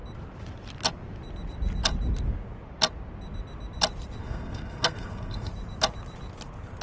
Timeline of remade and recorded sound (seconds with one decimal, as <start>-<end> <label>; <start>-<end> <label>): 0.0-4.2 recorded; 4.2-5.5 remade; 5.5-6.8 recorded